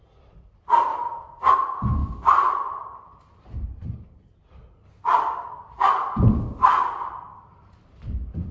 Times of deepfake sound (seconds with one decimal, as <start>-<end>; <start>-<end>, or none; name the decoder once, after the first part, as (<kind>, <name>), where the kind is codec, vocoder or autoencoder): none